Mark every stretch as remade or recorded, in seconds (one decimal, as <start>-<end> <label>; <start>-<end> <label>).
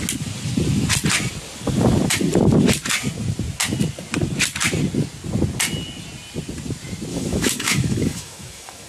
0.0-7.1 recorded; 7.1-8.9 remade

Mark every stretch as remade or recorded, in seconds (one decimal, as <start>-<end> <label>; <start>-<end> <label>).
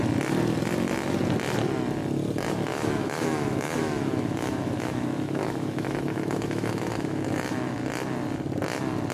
0.0-2.7 recorded; 2.7-7.8 remade; 7.8-9.1 recorded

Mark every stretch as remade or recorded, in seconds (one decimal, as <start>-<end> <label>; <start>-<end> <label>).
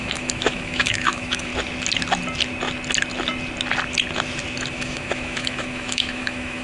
0.0-1.5 remade; 1.5-4.7 recorded; 4.7-6.6 remade